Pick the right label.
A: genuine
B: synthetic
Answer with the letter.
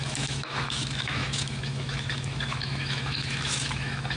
B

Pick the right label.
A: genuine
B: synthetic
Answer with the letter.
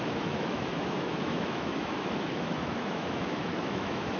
B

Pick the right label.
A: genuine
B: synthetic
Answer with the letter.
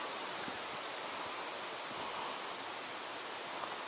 A